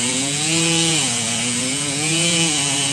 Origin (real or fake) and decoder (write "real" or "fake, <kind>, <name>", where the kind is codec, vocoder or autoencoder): fake, vocoder, Vocos